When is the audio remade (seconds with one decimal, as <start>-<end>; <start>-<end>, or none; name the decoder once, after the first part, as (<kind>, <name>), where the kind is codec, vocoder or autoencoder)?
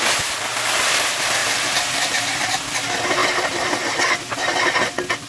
1.4-2.6 (vocoder, BigVGAN v2); 3.2-3.9